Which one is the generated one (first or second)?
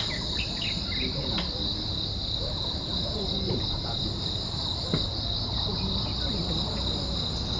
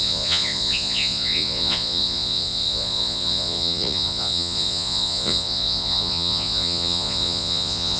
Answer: second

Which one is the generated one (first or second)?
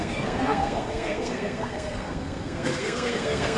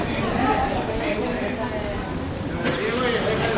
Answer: first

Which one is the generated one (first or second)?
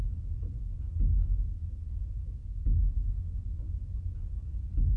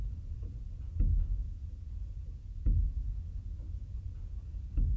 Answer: second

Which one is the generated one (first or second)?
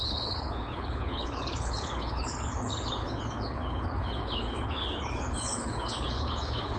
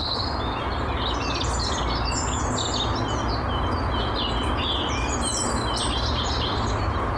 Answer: first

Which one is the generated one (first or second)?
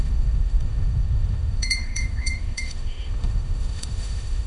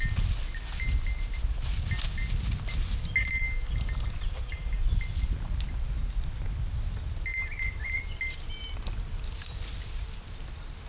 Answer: first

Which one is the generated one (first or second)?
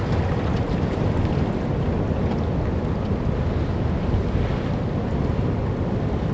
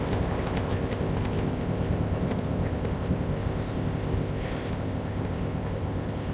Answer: second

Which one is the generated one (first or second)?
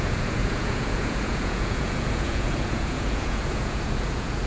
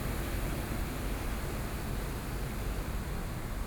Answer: first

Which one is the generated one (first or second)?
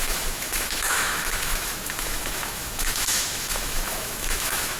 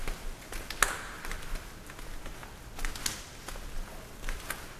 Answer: first